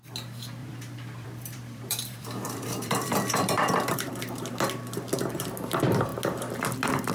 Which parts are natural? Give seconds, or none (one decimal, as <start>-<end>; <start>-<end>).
0.0-0.6; 4.1-7.1